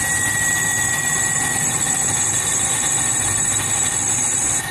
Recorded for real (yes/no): yes